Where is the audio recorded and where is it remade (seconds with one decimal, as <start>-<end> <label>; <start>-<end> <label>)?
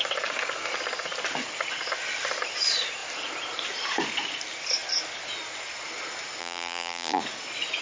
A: 0.0-6.4 recorded; 6.4-7.2 remade; 7.2-7.8 recorded